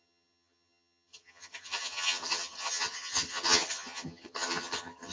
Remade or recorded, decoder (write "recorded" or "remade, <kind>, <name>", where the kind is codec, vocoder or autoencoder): remade, vocoder, HiFi-GAN